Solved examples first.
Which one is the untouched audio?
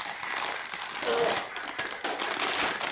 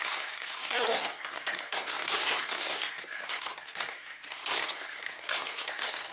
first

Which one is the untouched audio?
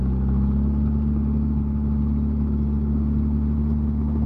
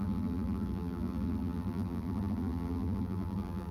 first